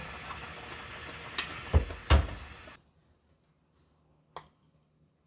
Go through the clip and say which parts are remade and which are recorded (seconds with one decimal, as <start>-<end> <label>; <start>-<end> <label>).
0.0-5.3 recorded